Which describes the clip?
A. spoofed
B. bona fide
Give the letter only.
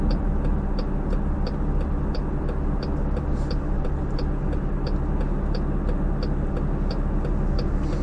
B